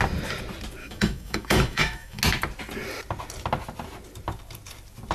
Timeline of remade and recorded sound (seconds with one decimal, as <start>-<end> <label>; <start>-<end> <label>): 0.0-0.8 recorded; 0.8-2.2 remade; 2.2-5.1 recorded